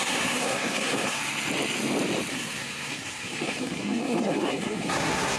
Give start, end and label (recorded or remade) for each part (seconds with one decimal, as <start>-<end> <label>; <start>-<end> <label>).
0.0-1.2 remade; 1.2-2.3 recorded; 2.3-5.4 remade